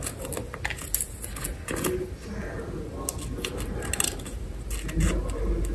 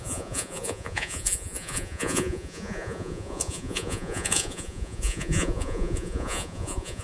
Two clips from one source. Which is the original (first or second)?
first